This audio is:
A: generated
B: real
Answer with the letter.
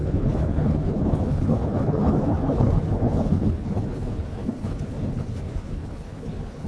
A